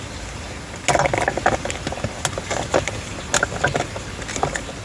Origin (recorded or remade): recorded